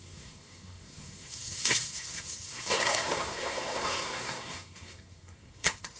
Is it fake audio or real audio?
fake